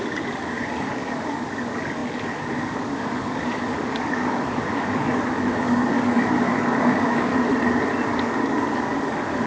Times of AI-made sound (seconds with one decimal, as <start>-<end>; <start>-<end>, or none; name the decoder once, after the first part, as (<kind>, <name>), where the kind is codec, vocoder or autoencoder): 0.0-7.3 (codec, DAC); 8.1-9.5

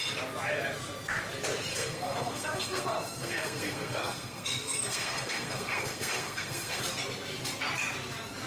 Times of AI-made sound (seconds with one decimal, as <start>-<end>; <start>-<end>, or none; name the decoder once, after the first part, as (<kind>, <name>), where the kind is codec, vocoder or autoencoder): 1.7-6.8 (codec, SNAC)

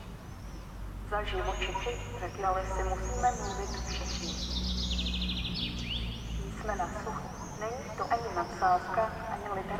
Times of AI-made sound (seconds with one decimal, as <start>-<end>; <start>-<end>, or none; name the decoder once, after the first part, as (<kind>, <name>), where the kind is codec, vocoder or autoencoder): none

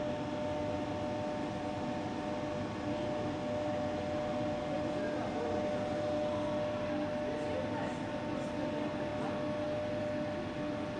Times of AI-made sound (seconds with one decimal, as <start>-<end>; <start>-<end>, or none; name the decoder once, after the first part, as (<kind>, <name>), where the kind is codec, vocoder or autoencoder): none

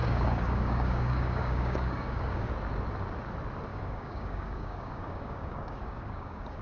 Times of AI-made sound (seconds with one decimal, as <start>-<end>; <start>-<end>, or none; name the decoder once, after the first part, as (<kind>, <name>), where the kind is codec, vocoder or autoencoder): 0.0-2.5 (codec, DAC); 3.7-6.6